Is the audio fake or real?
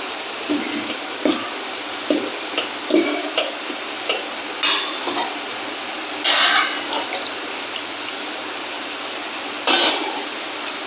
real